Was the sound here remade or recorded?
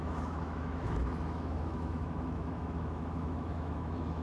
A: remade